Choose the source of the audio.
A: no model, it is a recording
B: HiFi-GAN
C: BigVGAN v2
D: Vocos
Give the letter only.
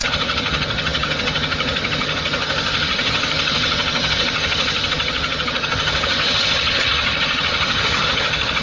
B